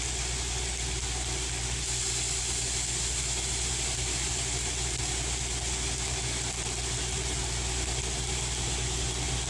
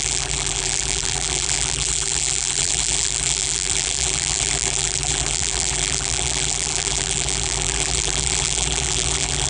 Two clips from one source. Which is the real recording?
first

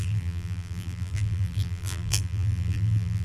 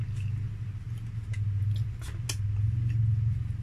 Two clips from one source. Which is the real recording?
second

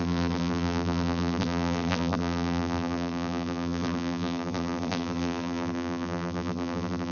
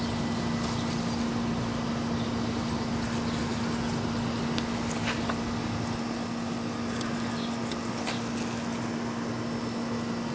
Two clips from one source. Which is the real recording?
second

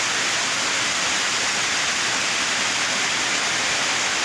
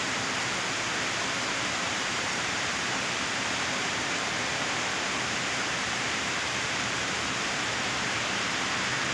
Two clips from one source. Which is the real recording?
first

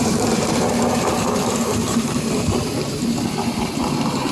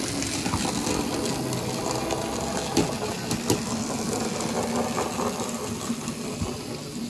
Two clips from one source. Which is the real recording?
second